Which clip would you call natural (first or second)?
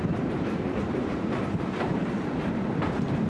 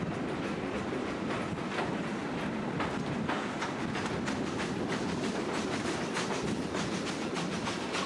second